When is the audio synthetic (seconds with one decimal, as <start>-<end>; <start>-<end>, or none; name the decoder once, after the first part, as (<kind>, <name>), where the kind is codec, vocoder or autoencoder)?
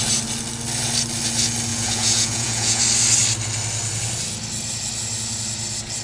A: 1.7-2.8 (vocoder, Vocos)